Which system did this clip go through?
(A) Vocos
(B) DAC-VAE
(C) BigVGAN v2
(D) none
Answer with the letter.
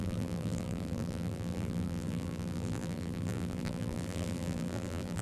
C